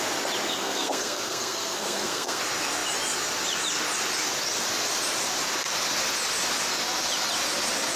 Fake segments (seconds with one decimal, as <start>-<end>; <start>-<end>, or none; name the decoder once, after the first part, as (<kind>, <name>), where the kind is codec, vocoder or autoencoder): 0.5-2.4 (codec, SNAC)